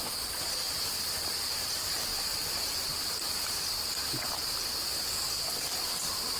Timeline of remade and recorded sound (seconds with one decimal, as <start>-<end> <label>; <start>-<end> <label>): 0.0-6.4 recorded